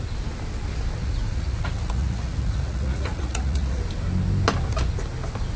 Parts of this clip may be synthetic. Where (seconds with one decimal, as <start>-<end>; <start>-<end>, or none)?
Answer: 1.0-3.8